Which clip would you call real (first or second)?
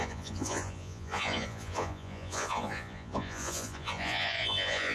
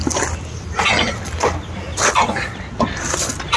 second